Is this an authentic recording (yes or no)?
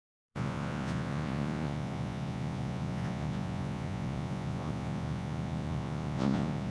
no